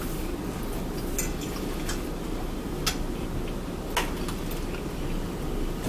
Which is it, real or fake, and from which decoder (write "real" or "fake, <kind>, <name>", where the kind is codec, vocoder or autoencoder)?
real